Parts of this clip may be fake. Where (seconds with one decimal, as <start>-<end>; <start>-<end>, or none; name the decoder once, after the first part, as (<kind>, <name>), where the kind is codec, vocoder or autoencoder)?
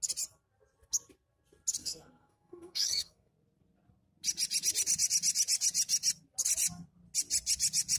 1.8-3.3 (codec, SNAC)